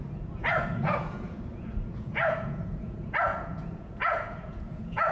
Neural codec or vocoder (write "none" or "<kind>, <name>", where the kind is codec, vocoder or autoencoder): vocoder, Vocos